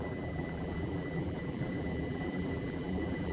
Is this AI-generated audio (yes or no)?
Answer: yes